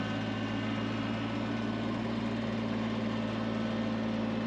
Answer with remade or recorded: recorded